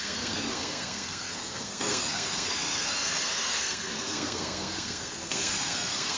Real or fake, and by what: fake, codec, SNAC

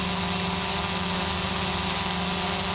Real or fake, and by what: real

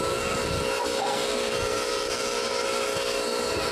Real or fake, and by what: fake, codec, SNAC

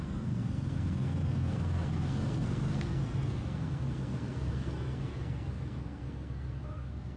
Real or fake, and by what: fake, codec, SNAC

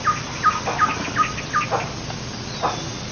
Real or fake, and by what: real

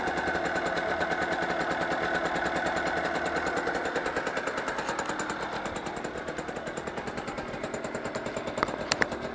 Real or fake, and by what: real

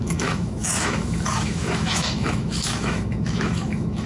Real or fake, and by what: fake, autoencoder, DAC-VAE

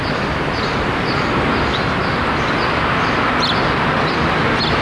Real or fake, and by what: fake, vocoder, BigVGAN v2